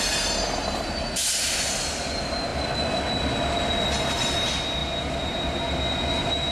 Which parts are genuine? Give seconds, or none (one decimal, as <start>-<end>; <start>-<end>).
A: 0.0-6.5